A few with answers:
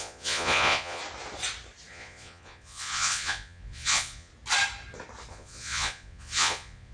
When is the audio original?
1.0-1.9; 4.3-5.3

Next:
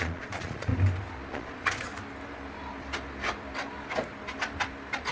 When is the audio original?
0.7-1.3; 1.9-5.1

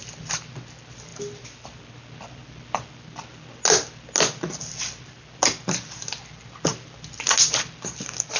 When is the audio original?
0.0-8.4

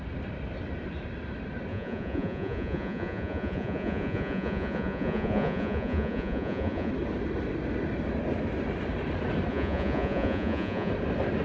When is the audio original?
0.0-1.7; 6.9-9.5; 10.9-11.4

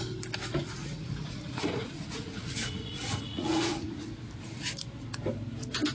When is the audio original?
0.0-0.6; 4.1-5.9

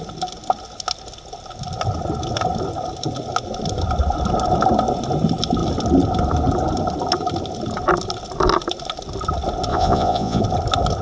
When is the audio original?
0.0-9.7; 10.4-11.0

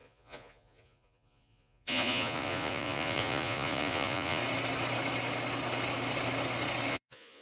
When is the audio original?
4.4-6.9

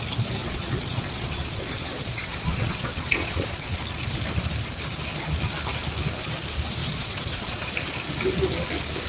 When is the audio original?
0.0-0.4; 3.8-6.8; 7.7-9.1